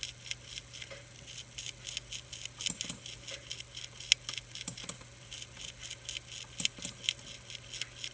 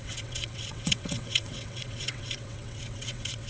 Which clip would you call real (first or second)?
first